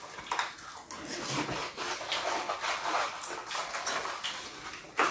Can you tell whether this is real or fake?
real